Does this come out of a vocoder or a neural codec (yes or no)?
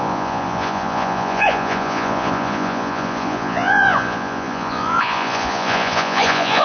yes